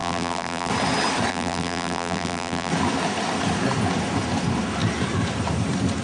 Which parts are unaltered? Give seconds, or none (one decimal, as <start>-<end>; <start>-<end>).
0.7-1.3; 2.7-6.0